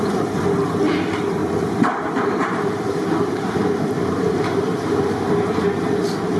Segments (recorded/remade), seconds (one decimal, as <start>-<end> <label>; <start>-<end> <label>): 0.0-1.4 recorded; 1.4-5.2 remade; 5.2-6.4 recorded